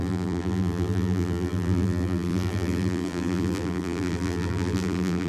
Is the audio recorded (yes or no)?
no